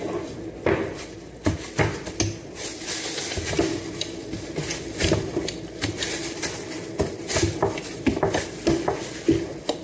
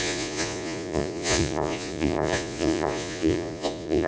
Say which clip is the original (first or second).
first